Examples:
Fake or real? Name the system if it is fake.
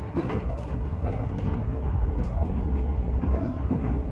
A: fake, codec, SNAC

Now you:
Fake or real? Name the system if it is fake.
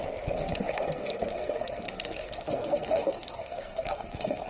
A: fake, codec, SNAC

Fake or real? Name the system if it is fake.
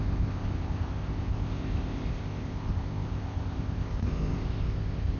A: fake, codec, ZipCodec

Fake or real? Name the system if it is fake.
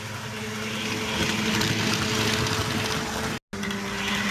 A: real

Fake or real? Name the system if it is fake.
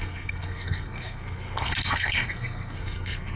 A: fake, codec, SNAC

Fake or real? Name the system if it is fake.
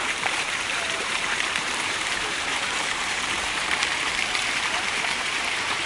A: fake, vocoder, BigVGAN v2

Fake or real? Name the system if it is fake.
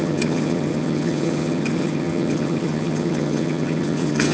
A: fake, vocoder, HiFi-GAN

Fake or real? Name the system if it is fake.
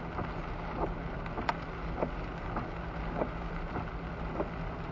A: real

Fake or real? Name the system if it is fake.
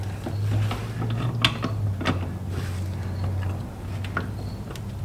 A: real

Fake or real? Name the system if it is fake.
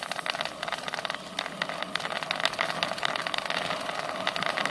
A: real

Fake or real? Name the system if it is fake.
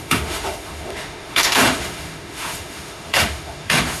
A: fake, autoencoder, DAC-VAE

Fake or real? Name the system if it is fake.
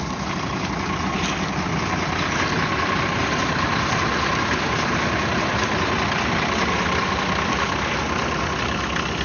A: real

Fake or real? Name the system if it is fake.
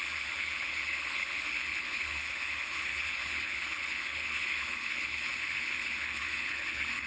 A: fake, codec, HILCodec